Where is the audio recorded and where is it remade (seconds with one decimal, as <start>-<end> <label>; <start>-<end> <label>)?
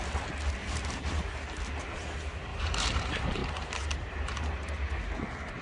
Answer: 0.0-0.6 recorded; 0.6-1.6 remade; 1.6-2.5 recorded; 2.5-3.0 remade; 3.0-5.6 recorded